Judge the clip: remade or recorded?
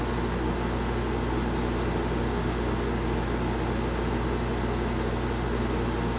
recorded